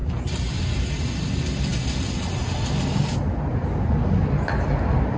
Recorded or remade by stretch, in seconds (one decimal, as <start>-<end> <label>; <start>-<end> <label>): 0.0-5.2 recorded